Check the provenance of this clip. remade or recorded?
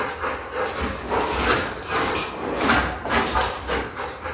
recorded